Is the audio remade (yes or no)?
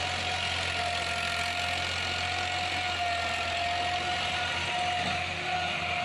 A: no